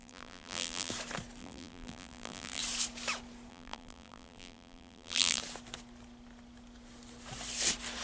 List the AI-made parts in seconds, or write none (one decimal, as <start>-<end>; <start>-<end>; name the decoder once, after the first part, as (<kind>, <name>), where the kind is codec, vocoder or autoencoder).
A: 0.0-0.9 (vocoder, BigVGAN v2); 1.4-2.6; 3.5-5.4